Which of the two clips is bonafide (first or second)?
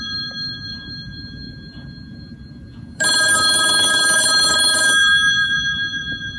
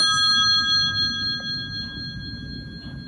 second